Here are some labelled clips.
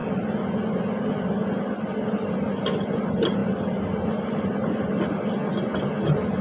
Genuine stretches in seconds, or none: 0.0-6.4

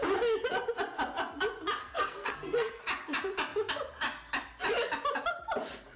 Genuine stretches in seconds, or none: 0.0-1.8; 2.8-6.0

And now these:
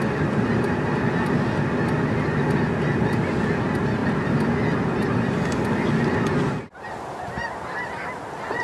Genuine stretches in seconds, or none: 0.0-8.6

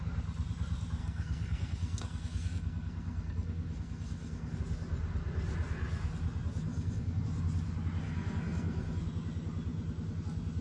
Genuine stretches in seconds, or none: 0.0-1.0; 4.6-6.7; 7.2-8.0; 9.0-10.6

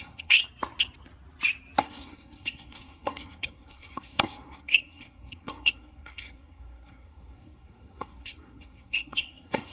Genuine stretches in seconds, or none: 0.4-1.8

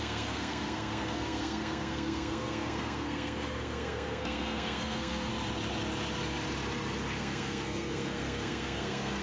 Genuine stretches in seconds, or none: 5.3-7.2

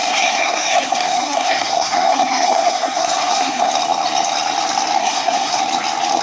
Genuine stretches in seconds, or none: 3.7-5.0; 5.6-6.2